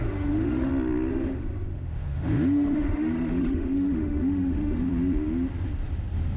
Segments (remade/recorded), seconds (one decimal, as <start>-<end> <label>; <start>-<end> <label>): 0.0-0.7 remade; 0.7-1.1 recorded; 1.1-4.9 remade; 4.9-6.4 recorded